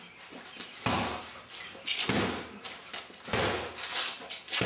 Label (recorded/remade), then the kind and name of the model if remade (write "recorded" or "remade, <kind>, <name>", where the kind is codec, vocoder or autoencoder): recorded